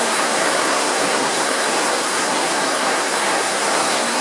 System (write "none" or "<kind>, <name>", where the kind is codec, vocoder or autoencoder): codec, SNAC